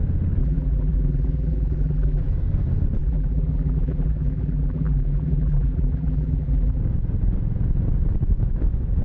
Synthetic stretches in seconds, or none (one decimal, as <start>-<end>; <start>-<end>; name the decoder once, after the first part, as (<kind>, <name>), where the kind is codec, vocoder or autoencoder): 0.4-2.2 (vocoder, BigVGAN v2); 3.0-6.8